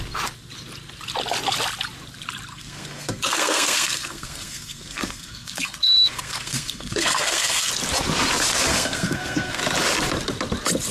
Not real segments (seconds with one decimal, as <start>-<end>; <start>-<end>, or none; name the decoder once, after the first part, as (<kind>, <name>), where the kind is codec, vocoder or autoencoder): 2.5-7.7 (codec, SNAC); 8.7-9.6